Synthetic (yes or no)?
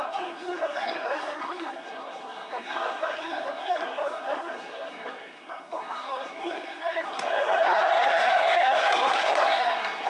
yes